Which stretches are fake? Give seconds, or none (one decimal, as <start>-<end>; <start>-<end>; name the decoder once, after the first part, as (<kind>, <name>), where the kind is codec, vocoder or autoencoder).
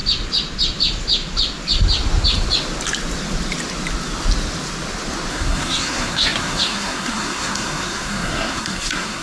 5.3-9.2 (codec, SNAC)